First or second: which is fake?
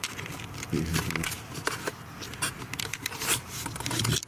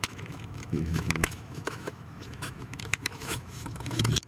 second